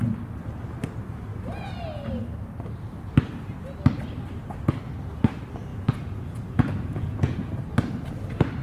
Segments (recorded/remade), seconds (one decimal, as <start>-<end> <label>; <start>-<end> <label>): 0.0-5.7 recorded; 5.7-7.5 remade; 7.5-8.6 recorded

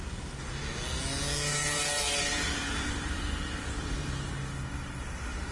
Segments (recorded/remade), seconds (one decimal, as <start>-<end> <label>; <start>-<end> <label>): 0.0-1.5 recorded; 1.5-4.3 remade; 4.3-5.5 recorded

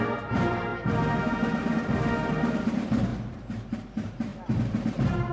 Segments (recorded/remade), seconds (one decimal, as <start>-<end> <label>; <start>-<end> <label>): 0.0-3.1 remade; 3.1-3.7 recorded; 3.7-5.3 remade

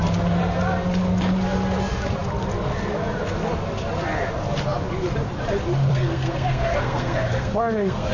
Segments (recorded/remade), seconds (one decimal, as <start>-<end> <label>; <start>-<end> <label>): 0.0-5.9 recorded; 5.9-8.1 remade

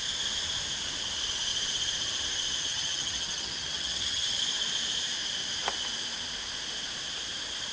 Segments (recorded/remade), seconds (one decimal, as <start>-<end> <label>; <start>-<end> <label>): 0.0-2.6 recorded; 2.6-4.4 remade; 4.4-7.7 recorded

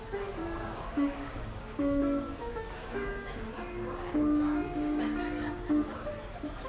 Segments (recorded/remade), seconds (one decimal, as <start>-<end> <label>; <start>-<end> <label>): 0.0-0.4 recorded; 0.4-2.0 remade; 2.0-2.4 recorded; 2.4-6.1 remade; 6.1-6.7 recorded

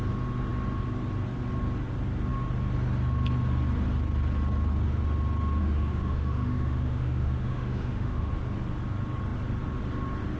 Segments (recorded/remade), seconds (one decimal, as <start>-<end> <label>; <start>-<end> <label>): 0.0-5.6 recorded; 5.6-8.3 remade; 8.3-10.4 recorded

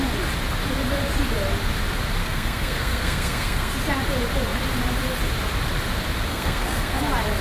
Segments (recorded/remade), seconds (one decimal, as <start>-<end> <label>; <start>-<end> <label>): 0.0-2.2 recorded; 2.2-3.7 remade; 3.7-6.3 recorded; 6.3-7.0 remade; 7.0-7.4 recorded